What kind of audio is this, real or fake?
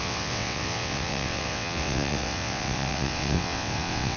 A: fake